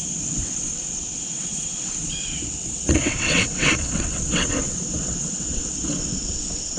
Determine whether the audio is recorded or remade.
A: remade